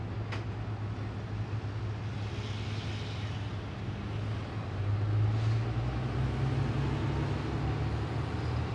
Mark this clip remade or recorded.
recorded